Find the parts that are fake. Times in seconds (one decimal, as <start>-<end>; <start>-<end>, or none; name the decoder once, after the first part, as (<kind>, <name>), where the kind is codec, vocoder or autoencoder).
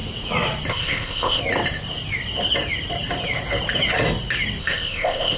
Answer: 0.7-1.4 (codec, ZipCodec); 4.6-5.4